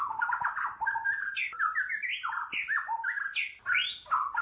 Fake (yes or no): no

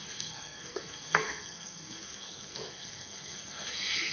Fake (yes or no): yes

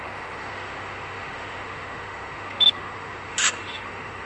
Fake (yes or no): yes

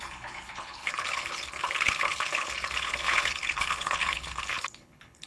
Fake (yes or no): yes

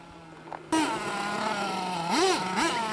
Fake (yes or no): no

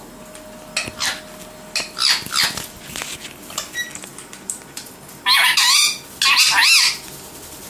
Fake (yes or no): no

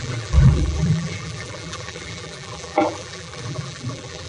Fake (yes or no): yes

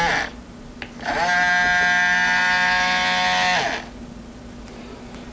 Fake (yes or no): no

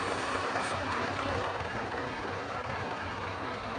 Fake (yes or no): yes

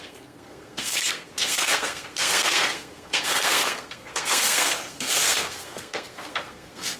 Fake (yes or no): yes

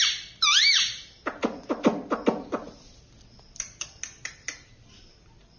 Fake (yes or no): no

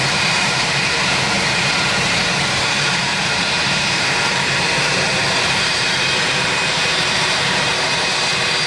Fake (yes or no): yes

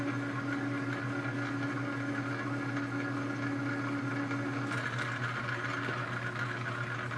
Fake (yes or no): no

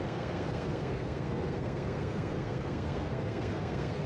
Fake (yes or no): yes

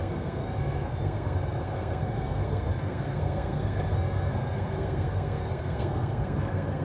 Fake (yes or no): yes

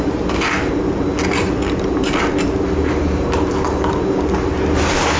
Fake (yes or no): no